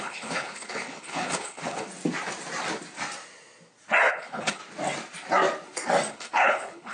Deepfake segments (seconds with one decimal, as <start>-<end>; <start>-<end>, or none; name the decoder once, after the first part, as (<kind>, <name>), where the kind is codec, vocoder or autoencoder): 0.0-1.9 (codec, HILCodec); 4.1-4.6; 6.1-6.9